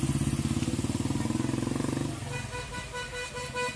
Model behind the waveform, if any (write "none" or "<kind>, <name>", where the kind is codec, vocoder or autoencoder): none